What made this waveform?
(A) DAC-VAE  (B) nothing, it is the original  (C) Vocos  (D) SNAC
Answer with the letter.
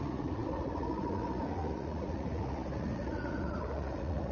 C